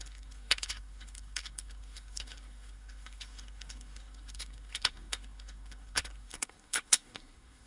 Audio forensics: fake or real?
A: fake